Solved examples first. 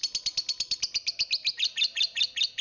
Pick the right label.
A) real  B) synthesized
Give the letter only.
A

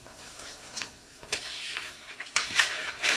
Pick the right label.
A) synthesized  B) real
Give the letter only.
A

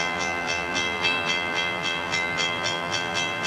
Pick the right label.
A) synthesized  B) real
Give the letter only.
A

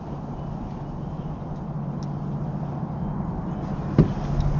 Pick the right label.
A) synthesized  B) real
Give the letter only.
B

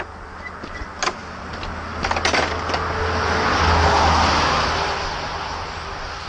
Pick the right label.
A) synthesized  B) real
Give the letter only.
B